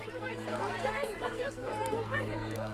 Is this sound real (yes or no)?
no